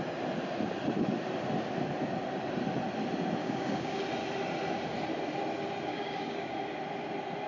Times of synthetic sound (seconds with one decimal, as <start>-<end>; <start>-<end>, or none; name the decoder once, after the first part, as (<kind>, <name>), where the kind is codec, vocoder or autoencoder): 3.4-4.0 (codec, DAC); 5.9-6.5